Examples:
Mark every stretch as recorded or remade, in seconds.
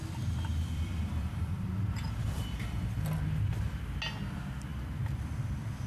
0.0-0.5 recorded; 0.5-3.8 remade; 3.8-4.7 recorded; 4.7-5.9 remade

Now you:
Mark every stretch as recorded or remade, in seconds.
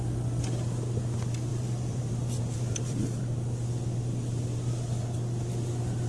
0.0-1.5 recorded; 1.5-3.3 remade; 3.3-6.1 recorded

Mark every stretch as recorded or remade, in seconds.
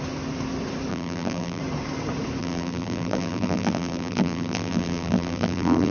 0.0-0.9 recorded; 0.9-1.6 remade; 1.6-2.4 recorded; 2.4-5.9 remade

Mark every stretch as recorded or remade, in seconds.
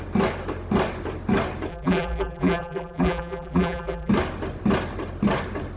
0.0-1.7 recorded; 1.7-4.1 remade; 4.1-5.8 recorded